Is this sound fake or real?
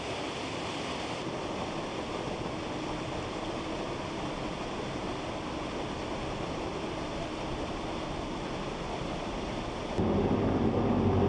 real